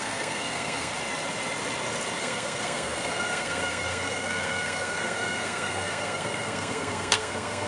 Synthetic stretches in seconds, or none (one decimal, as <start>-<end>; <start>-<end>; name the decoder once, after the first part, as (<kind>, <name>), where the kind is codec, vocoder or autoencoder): 0.0-0.9 (codec, SNAC); 2.2-7.7